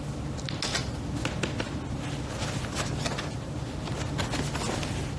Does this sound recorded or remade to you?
recorded